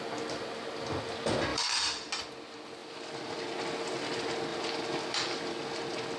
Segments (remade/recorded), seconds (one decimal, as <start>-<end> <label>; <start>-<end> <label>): 0.0-1.5 recorded; 1.5-2.1 remade; 2.1-2.8 recorded; 2.8-3.4 remade; 3.4-4.5 recorded; 4.5-5.4 remade; 5.4-6.2 recorded